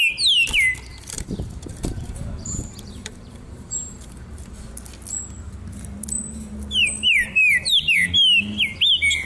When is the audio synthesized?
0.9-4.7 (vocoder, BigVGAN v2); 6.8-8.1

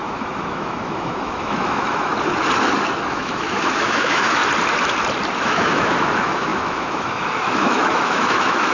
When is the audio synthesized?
0.0-2.1 (autoencoder, DAC-VAE); 3.1-4.4; 5.4-8.7